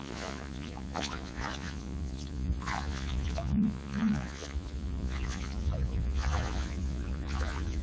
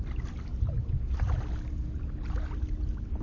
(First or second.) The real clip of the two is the second